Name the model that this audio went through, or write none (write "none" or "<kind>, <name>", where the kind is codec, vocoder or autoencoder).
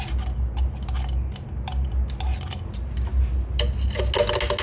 none